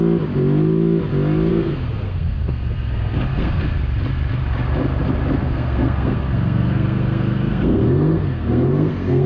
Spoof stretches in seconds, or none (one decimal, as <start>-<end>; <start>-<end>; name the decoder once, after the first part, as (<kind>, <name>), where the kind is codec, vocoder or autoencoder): 1.5-3.6 (codec, SNAC); 5.4-9.3